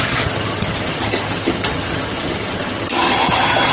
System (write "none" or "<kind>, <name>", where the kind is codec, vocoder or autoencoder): vocoder, HiFi-GAN